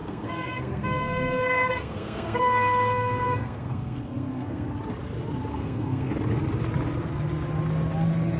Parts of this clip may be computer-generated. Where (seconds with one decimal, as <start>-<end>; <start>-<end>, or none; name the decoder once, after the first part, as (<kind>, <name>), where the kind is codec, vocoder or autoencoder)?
0.0-4.7 (codec, SNAC); 5.5-6.1